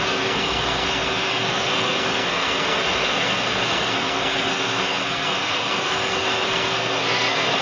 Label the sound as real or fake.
fake